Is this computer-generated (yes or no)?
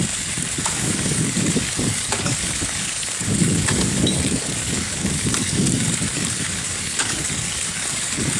yes